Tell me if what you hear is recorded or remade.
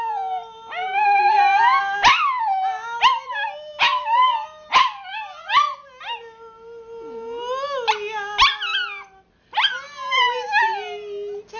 recorded